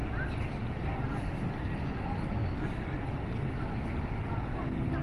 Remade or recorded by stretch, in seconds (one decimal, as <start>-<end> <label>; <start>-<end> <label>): 0.0-5.0 recorded